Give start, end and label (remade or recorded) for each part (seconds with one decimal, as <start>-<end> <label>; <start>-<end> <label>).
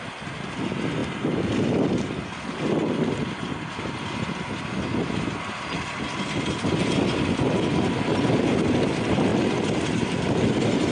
0.0-10.9 recorded